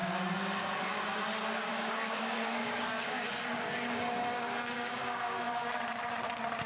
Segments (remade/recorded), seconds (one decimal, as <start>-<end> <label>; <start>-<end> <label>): 0.0-1.7 recorded; 1.7-5.7 remade; 5.7-6.7 recorded